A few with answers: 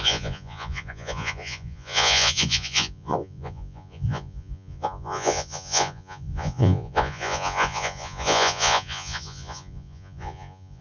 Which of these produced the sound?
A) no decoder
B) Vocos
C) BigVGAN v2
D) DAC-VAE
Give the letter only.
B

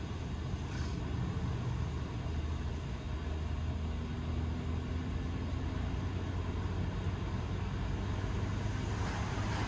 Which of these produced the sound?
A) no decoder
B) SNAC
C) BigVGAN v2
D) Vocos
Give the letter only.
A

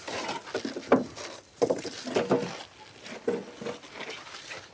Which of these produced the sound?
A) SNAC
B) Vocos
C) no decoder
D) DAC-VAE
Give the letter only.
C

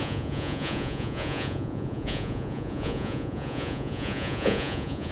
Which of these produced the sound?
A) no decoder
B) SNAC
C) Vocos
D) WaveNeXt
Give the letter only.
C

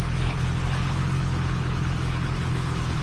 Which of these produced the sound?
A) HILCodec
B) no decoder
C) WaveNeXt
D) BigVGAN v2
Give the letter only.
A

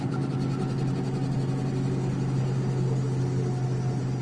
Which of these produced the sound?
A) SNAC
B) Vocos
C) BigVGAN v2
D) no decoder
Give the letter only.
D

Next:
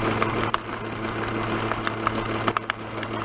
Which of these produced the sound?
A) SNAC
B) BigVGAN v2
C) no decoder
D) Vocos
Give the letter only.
C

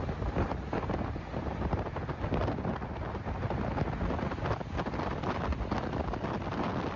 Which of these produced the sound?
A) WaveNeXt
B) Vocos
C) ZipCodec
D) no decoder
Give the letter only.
D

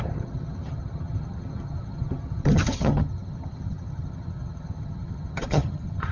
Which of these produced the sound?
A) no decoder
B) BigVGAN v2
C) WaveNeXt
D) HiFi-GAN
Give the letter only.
D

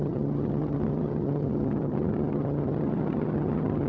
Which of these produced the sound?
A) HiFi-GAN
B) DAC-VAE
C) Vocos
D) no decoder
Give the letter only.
A